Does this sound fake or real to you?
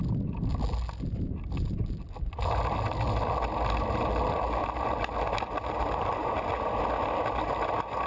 real